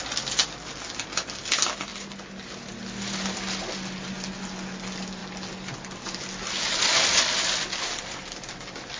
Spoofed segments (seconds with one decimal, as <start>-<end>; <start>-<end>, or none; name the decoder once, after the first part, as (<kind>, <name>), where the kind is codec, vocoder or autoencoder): none